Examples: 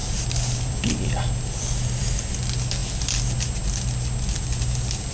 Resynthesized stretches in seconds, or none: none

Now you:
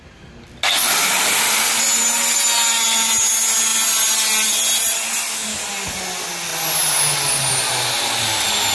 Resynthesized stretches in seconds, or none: none

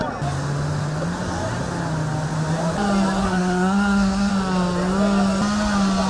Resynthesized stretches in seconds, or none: 3.2-4.3

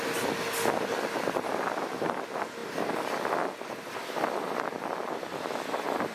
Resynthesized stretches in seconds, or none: none

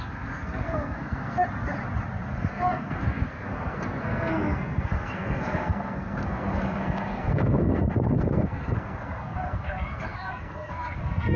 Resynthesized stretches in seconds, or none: 0.0-1.4; 2.5-11.4

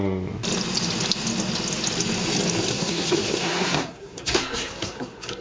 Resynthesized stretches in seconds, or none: 2.7-5.4

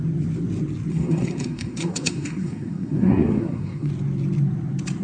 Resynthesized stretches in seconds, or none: 0.9-3.9

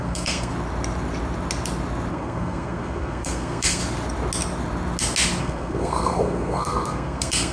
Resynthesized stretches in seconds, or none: 0.0-0.5; 2.1-3.8; 5.4-7.5